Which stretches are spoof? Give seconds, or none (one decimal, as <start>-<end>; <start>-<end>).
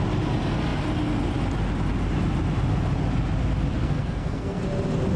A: 3.8-4.6